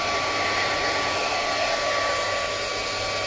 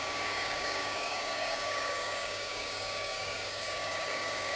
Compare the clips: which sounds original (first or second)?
first